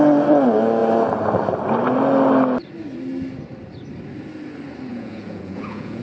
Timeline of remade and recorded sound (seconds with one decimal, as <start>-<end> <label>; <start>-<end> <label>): 0.0-4.9 recorded; 4.9-6.0 remade